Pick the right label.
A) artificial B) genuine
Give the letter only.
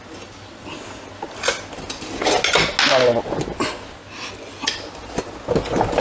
B